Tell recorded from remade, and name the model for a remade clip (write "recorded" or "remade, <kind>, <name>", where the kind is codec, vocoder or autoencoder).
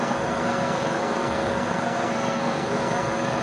remade, codec, SNAC